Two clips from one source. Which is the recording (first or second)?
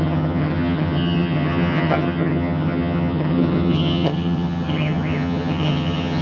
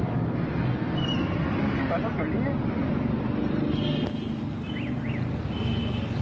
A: second